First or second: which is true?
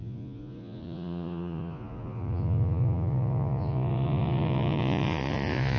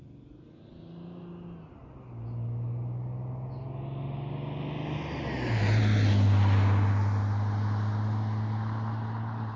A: second